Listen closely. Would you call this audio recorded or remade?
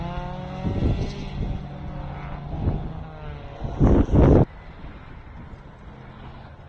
recorded